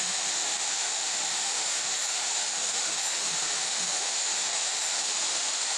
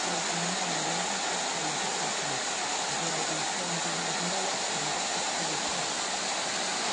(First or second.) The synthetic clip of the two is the first